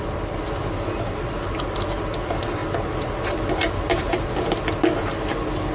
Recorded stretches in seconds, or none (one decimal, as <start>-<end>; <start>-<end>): 0.0-5.7